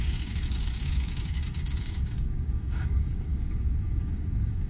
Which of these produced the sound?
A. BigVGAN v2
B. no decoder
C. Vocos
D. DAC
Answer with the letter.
D